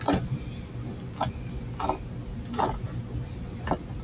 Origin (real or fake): real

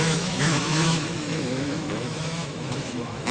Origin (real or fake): fake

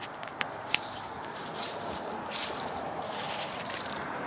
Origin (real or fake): fake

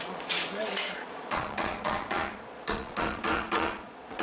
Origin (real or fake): fake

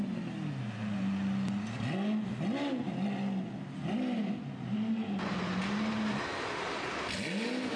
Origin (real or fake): real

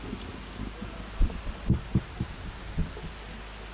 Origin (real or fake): real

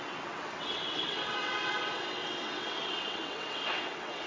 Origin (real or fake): fake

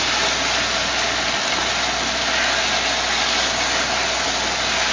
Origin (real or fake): real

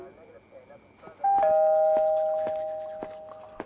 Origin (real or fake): real